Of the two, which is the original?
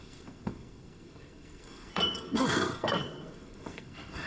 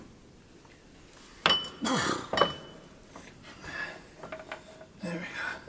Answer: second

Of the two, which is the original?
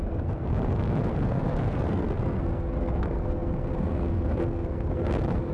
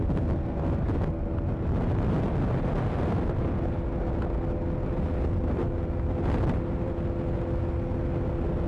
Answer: second